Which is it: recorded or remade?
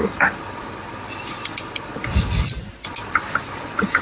recorded